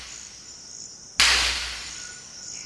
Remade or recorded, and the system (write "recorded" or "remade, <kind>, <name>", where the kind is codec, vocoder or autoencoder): recorded